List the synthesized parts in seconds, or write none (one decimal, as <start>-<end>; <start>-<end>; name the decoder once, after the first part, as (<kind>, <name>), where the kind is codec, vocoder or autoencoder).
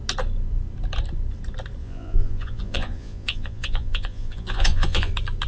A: 1.8-5.1 (vocoder, Vocos)